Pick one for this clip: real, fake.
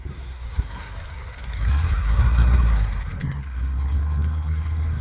fake